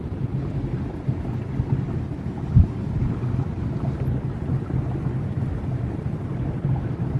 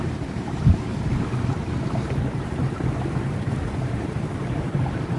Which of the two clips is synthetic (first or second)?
second